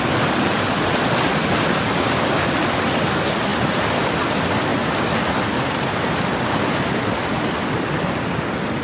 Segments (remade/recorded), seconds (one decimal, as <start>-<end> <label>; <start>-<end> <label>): 0.0-8.8 recorded